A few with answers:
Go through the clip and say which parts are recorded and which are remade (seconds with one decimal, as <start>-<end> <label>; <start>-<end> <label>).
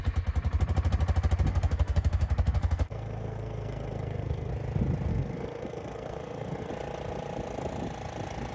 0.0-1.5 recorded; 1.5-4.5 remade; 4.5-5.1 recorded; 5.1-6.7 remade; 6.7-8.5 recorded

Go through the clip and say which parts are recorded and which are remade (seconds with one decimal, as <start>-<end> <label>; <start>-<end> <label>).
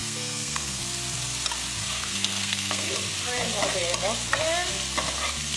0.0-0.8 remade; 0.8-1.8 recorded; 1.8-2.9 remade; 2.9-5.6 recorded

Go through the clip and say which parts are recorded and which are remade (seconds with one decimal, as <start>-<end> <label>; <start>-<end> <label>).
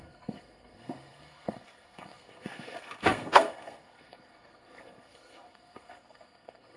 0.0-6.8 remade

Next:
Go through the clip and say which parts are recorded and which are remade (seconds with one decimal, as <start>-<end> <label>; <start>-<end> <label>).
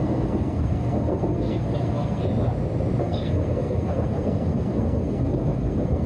0.0-2.2 remade; 2.2-3.0 recorded; 3.0-6.1 remade